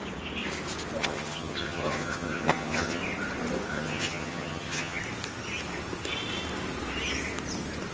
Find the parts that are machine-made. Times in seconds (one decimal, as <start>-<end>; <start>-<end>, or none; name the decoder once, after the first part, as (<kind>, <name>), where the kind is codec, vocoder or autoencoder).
1.0-3.0 (vocoder, HiFi-GAN); 3.7-5.0